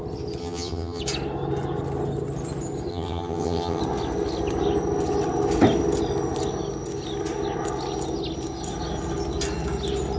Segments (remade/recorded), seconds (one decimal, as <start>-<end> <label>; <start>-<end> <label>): 0.0-0.4 recorded; 0.4-1.0 remade; 1.0-2.9 recorded; 2.9-3.8 remade; 3.8-10.2 recorded